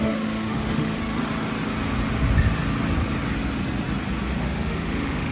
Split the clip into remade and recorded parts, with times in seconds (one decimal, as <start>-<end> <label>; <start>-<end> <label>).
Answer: 0.0-1.2 remade; 1.2-4.4 recorded; 4.4-5.3 remade